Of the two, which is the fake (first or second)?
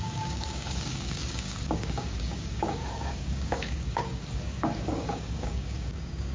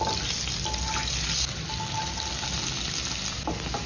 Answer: first